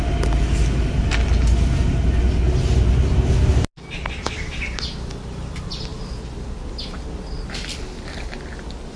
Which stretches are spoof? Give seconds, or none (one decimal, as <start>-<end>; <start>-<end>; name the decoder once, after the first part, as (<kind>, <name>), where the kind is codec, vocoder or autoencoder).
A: none

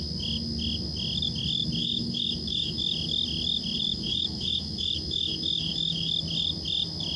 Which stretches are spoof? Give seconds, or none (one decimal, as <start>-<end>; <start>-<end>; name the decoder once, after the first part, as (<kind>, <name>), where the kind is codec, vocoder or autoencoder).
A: 1.8-2.8 (autoencoder, DAC-VAE); 3.9-6.1

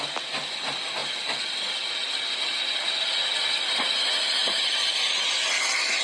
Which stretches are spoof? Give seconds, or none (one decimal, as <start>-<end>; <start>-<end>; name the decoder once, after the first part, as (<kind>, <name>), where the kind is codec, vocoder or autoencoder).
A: none

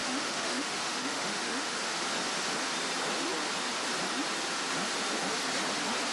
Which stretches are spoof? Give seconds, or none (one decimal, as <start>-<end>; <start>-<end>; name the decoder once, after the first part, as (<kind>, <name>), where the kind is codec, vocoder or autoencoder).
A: 0.0-1.8 (autoencoder, DAC-VAE)